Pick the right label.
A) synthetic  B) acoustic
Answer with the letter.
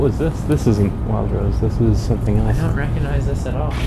B